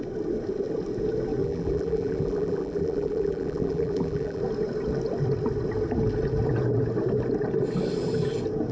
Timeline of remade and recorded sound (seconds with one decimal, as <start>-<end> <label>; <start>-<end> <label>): 0.0-1.4 recorded; 1.4-4.4 remade; 4.4-8.7 recorded